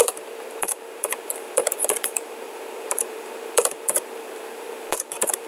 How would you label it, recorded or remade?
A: remade